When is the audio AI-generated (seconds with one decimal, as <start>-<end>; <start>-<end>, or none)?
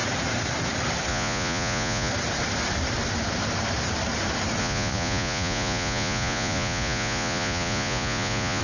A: 1.1-2.1; 4.6-8.6